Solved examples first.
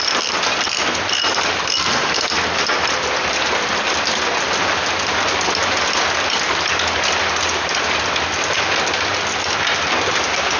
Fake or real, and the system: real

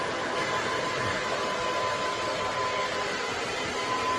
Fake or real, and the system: real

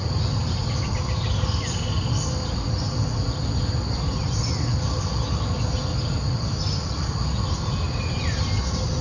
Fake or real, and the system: real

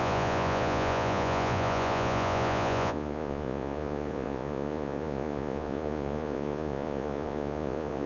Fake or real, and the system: fake, vocoder, Vocos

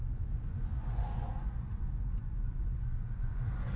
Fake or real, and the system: fake, vocoder, Vocos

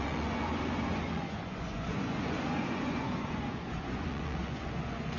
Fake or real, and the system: fake, vocoder, Vocos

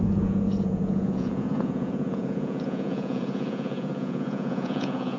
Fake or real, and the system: fake, vocoder, Vocos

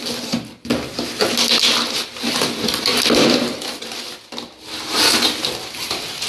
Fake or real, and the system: real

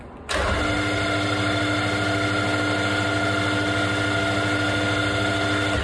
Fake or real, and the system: real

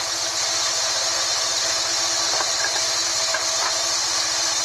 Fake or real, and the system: real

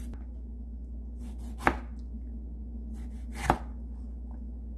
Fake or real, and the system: real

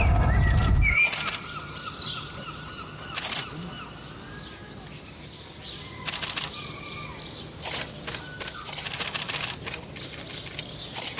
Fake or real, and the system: real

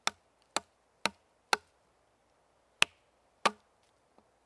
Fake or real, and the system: real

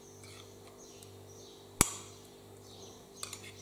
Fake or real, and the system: real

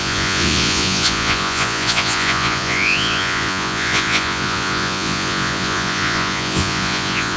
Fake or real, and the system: fake, vocoder, Vocos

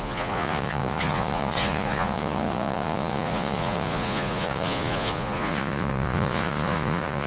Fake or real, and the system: fake, vocoder, Vocos